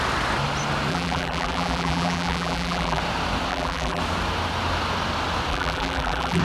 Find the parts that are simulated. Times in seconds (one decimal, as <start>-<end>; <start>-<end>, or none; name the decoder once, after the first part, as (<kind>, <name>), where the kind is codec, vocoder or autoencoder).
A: 0.9-3.0 (vocoder, BigVGAN v2); 3.5-4.0; 5.5-6.4